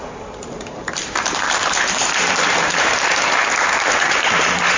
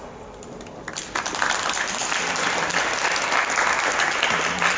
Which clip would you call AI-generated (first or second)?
first